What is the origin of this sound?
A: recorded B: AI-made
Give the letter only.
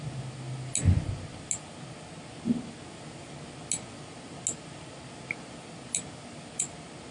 A